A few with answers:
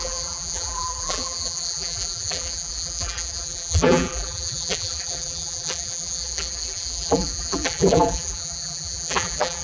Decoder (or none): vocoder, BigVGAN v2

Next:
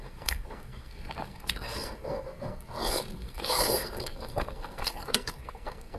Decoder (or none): codec, SNAC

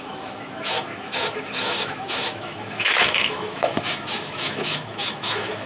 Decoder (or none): autoencoder, DAC-VAE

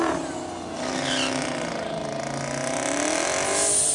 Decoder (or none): none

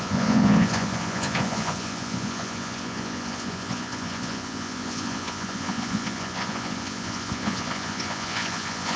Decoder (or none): vocoder, Vocos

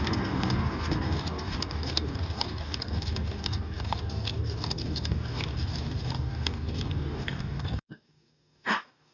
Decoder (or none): codec, DAC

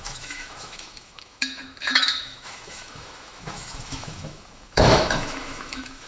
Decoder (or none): autoencoder, DAC-VAE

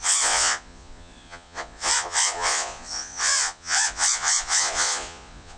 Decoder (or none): vocoder, Vocos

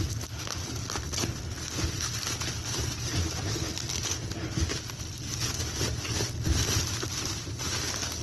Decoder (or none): none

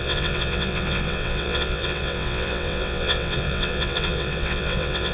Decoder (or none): vocoder, WaveNeXt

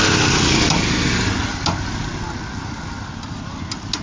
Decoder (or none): none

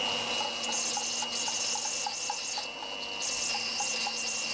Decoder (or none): none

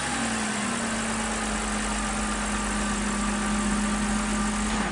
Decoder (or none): none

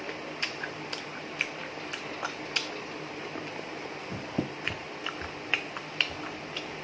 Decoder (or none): none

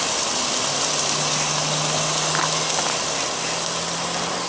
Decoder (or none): none